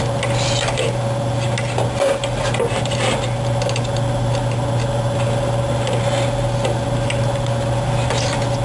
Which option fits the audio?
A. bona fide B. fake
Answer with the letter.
A